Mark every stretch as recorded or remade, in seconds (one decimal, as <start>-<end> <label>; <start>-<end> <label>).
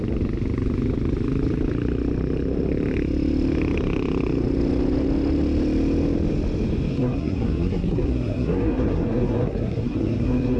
0.0-6.9 recorded; 6.9-10.6 remade